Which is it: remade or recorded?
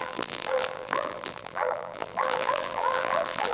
remade